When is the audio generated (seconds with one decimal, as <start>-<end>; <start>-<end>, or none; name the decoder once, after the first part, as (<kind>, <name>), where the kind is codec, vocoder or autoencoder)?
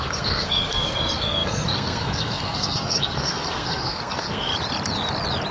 0.0-4.5 (codec, SNAC)